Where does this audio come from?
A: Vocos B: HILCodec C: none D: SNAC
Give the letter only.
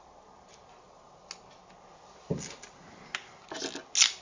C